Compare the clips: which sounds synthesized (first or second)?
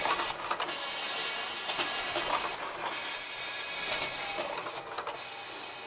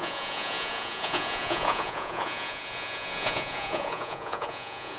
second